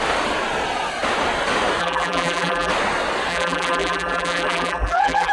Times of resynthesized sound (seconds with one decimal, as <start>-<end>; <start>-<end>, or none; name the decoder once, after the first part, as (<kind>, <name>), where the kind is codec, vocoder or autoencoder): 1.8-2.7 (vocoder, BigVGAN v2); 3.3-5.3